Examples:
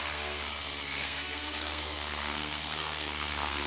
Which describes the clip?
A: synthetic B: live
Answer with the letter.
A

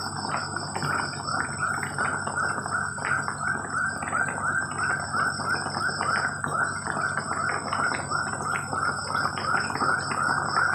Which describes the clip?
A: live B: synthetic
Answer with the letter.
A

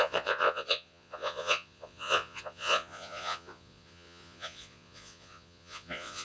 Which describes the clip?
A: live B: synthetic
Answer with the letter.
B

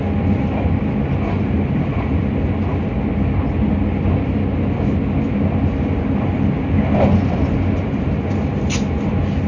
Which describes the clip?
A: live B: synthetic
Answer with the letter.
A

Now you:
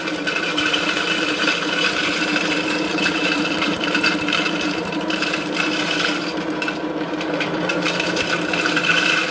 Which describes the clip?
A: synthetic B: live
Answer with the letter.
A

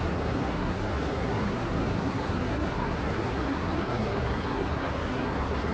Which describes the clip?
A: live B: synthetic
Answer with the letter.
B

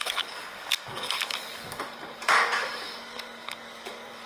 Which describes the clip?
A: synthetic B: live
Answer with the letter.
A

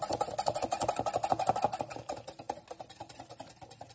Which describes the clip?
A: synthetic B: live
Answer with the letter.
B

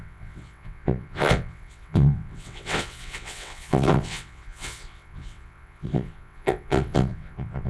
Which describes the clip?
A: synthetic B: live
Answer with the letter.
A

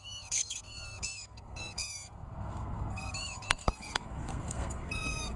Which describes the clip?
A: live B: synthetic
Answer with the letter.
B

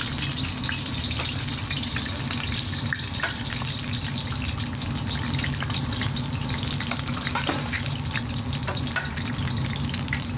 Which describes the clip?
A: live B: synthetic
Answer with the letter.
A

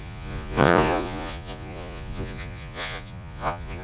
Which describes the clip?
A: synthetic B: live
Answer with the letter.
A